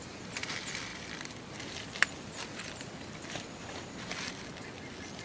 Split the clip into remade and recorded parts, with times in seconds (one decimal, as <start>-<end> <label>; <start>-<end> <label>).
0.0-5.2 recorded